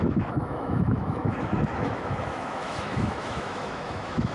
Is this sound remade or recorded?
remade